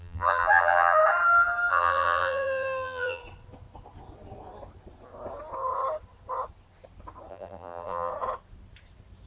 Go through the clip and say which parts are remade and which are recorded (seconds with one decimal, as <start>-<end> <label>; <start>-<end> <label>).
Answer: 0.0-1.0 remade; 1.0-1.7 recorded; 1.7-3.2 remade; 3.2-7.3 recorded; 7.3-8.1 remade; 8.1-9.3 recorded